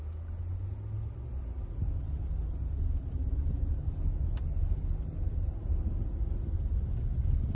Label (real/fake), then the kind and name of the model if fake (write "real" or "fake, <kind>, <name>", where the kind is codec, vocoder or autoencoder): real